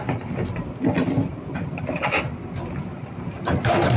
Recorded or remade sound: recorded